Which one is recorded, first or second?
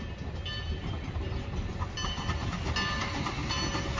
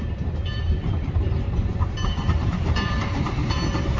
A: first